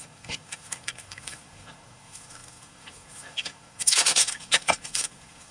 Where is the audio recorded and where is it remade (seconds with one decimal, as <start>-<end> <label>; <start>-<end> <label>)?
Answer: 0.0-5.5 remade